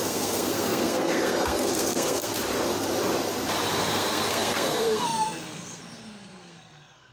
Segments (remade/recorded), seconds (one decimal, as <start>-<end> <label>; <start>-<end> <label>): 0.0-2.3 remade; 2.3-3.8 recorded; 3.8-7.1 remade